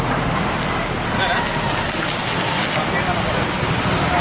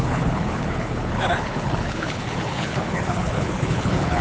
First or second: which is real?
first